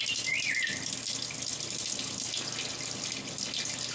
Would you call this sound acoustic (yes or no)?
yes